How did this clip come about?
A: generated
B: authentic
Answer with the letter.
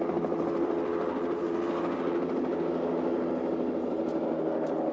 B